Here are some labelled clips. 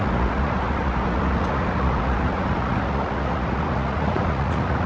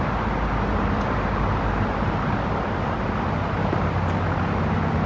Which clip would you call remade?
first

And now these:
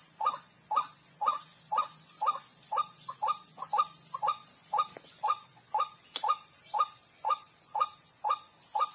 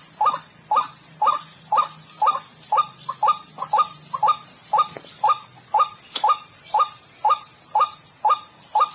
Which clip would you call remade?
first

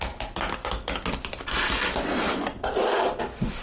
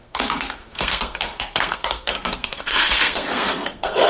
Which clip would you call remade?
second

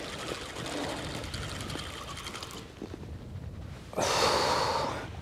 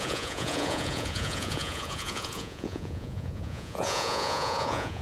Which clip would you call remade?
second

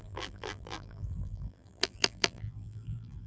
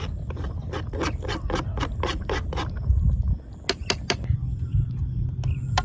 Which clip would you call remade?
first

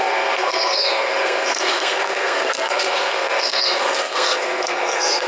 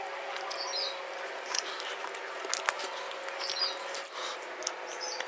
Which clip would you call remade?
first